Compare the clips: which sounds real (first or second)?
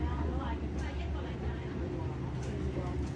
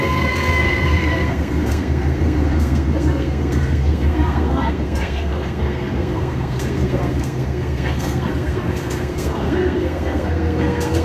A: first